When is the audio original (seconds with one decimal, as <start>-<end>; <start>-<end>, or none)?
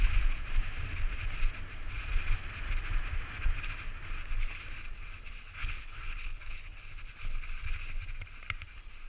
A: 0.0-5.6; 6.8-9.1